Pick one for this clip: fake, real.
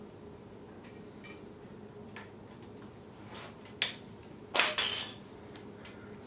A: real